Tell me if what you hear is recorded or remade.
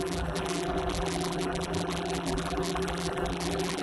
remade